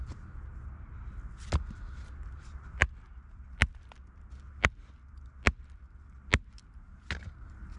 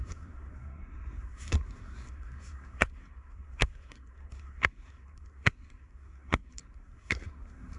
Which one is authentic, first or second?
first